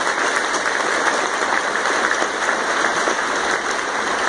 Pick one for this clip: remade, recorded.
recorded